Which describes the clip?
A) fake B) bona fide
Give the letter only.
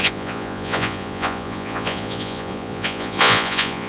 A